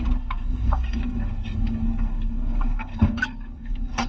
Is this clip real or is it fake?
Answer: fake